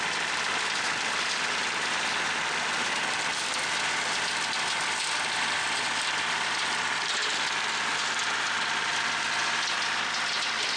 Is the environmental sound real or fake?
real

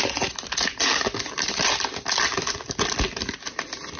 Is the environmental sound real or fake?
real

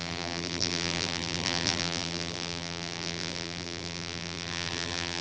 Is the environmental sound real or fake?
fake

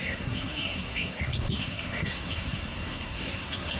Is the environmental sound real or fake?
fake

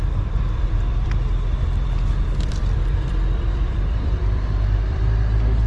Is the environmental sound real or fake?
fake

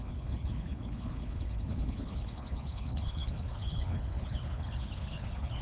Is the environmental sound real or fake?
fake